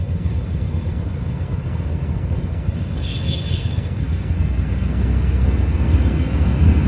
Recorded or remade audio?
remade